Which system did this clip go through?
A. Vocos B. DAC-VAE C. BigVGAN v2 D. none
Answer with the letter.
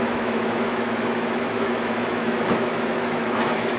B